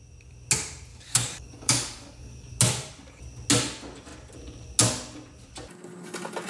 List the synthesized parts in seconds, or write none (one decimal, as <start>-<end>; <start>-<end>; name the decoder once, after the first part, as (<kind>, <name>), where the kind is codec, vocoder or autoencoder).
0.9-2.5 (codec, DAC)